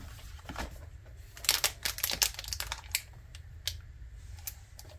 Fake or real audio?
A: real